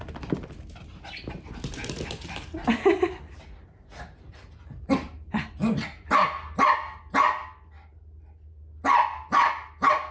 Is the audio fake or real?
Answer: real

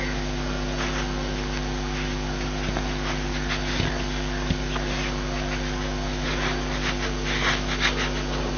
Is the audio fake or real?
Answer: real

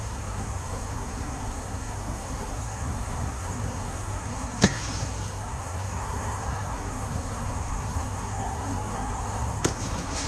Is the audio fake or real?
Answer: fake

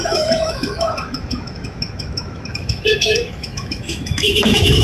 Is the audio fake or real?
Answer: fake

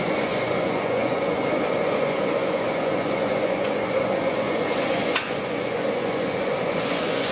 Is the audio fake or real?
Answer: fake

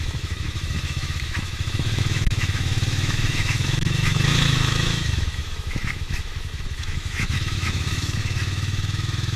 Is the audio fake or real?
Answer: fake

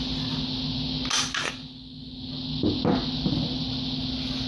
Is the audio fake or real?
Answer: real